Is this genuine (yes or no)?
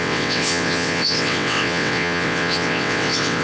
no